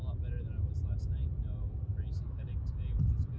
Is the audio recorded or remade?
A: recorded